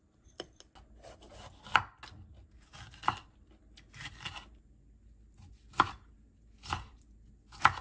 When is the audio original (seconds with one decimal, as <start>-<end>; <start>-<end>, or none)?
0.0-7.8